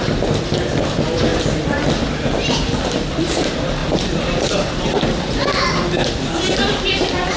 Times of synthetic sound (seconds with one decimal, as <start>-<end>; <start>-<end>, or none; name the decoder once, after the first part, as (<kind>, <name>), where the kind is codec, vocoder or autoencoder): none